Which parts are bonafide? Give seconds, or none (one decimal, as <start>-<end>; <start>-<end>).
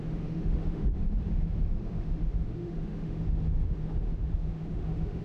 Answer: none